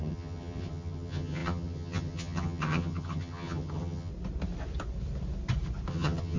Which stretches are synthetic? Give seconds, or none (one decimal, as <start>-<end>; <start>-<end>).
0.0-4.1; 5.9-6.4